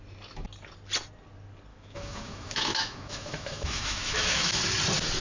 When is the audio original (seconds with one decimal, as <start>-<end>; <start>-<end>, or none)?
0.0-1.7; 4.6-5.2